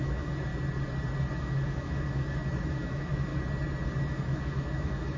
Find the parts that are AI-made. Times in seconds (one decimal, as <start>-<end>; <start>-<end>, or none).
0.0-0.5; 1.4-3.3; 4.0-5.2

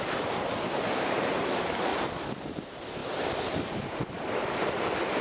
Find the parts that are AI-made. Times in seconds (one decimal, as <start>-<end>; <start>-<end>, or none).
none

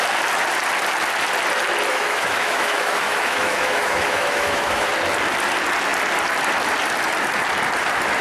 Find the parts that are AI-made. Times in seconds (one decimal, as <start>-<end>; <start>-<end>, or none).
1.9-4.9

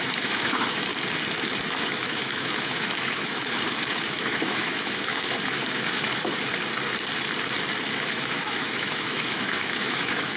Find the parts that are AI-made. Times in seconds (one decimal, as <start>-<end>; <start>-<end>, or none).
0.0-0.9; 1.6-6.3; 7.9-10.4

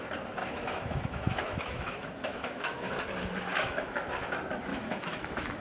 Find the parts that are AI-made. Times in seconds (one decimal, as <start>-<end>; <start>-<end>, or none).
0.4-2.9; 3.5-4.0; 4.7-5.6

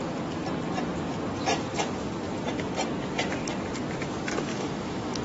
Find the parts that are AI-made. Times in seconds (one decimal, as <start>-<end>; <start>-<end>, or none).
4.5-5.2

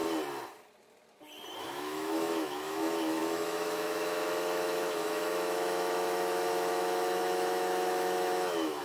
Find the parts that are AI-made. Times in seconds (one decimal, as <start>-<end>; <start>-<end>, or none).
1.6-8.8